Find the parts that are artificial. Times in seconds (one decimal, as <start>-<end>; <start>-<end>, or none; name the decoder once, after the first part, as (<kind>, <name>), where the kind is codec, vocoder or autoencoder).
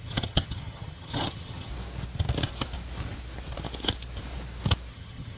0.0-1.7 (vocoder, HiFi-GAN); 4.9-5.4